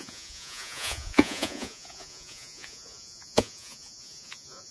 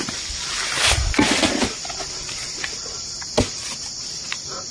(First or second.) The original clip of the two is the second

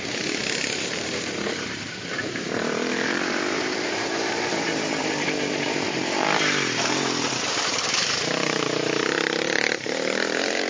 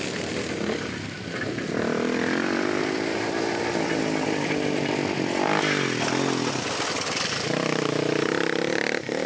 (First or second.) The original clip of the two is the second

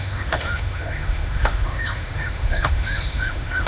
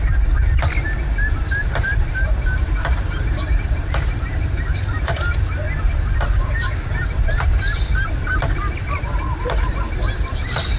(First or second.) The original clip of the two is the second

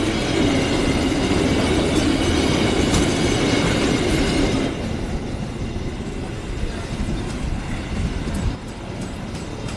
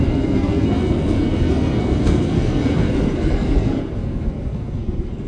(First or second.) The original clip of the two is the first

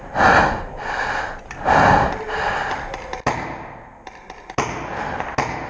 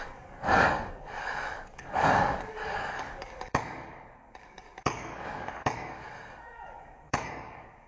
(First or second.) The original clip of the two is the first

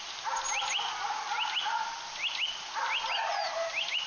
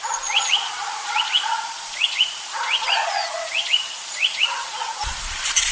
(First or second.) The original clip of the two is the first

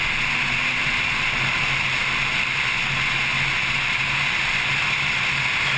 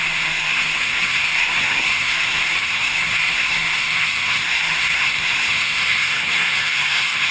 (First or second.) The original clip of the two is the first